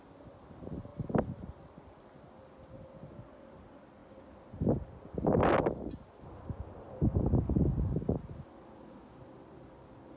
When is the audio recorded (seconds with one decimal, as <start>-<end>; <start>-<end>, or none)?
0.0-10.2